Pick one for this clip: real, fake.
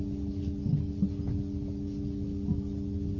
real